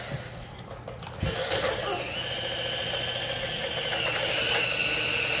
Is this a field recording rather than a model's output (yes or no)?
yes